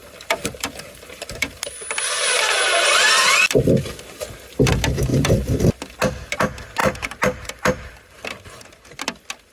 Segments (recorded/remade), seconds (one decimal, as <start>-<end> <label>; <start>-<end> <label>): 0.0-1.5 remade; 1.5-5.1 recorded; 5.1-5.6 remade; 5.6-6.8 recorded; 6.8-8.3 remade; 8.3-9.5 recorded